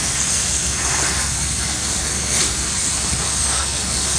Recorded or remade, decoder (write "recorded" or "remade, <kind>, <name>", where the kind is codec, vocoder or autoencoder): remade, codec, SNAC